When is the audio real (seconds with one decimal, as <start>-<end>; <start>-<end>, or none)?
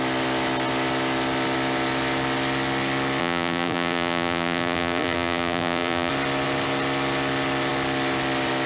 0.0-3.2; 6.1-8.7